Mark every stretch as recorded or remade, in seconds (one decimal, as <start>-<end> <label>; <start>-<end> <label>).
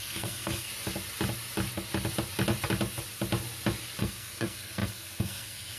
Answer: 0.0-0.7 remade; 0.7-4.0 recorded; 4.0-5.8 remade